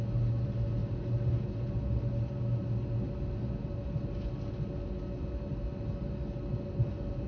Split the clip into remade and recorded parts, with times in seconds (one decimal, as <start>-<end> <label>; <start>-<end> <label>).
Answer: 0.0-7.3 recorded